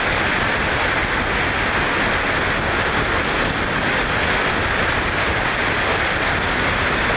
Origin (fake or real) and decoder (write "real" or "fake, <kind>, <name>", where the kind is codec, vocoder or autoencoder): real